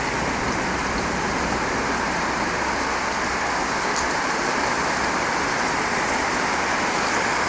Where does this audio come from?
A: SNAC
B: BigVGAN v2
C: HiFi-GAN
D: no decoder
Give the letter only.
D